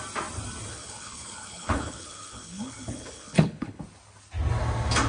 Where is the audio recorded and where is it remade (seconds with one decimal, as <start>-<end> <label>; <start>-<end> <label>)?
0.0-0.7 recorded; 0.7-3.8 remade; 3.8-5.1 recorded